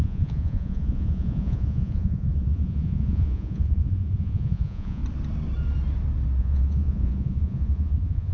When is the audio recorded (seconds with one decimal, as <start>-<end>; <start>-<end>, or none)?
5.0-6.4